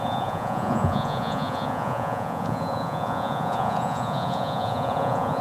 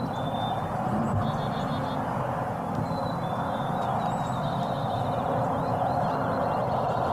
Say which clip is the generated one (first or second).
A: first